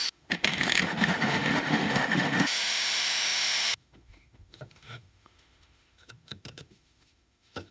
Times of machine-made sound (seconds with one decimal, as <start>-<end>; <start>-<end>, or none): 0.0-7.7